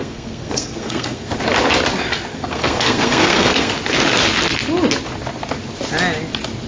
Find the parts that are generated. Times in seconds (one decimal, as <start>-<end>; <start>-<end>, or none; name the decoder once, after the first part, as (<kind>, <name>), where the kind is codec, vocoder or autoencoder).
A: 0.0-1.3 (codec, SNAC); 2.3-3.7